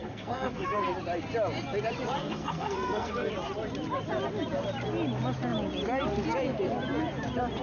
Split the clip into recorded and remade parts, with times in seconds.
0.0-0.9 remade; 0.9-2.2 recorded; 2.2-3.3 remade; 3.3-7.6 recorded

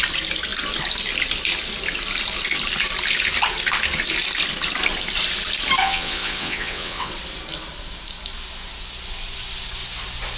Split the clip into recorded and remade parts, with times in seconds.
0.0-5.8 recorded; 5.8-7.1 remade; 7.1-10.4 recorded

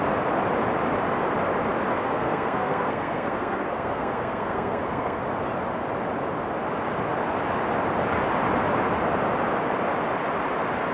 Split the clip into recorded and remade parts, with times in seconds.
0.0-1.9 recorded; 1.9-5.2 remade; 5.2-10.9 recorded